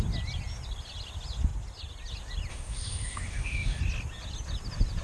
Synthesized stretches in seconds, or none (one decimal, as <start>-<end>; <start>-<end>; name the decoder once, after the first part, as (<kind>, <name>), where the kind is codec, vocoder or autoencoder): 2.5-3.8 (autoencoder, DAC-VAE)